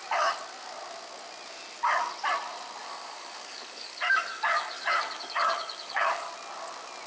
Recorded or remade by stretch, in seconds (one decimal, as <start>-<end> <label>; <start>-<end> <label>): 0.0-2.8 recorded; 2.8-6.3 remade; 6.3-7.1 recorded